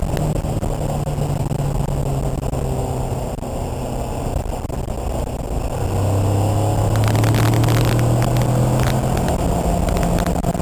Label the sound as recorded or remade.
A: recorded